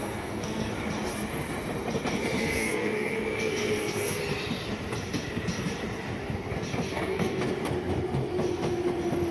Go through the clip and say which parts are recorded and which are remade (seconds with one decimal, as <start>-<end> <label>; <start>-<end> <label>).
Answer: 0.0-0.7 remade; 0.7-2.4 recorded; 2.4-4.2 remade; 4.2-6.9 recorded; 6.9-7.4 remade; 7.4-9.3 recorded